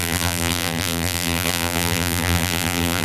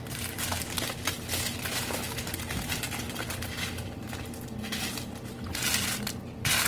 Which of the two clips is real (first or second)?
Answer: second